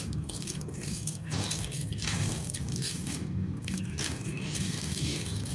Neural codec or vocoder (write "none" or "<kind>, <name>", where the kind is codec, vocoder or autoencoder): codec, DAC